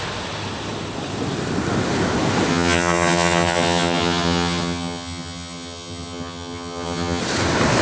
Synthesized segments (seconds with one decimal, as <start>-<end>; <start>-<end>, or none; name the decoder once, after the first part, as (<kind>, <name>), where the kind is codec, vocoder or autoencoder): 2.5-7.2 (vocoder, HiFi-GAN)